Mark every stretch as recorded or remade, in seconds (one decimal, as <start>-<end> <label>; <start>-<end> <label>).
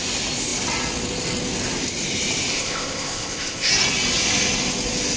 0.0-2.5 recorded; 2.5-3.7 remade; 3.7-5.2 recorded